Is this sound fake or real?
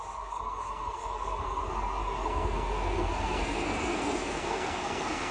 fake